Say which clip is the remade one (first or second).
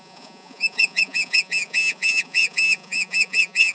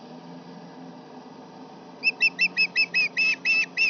first